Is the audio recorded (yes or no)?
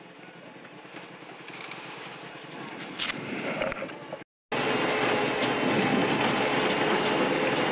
yes